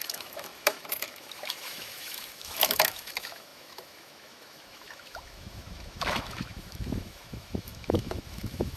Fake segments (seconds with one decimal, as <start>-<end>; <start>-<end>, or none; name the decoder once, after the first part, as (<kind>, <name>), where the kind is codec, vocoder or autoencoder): 0.0-8.8 (autoencoder, DAC-VAE)